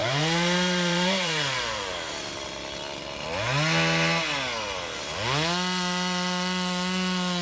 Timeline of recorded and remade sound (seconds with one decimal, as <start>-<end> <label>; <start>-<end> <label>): 0.0-2.1 remade; 2.1-7.4 recorded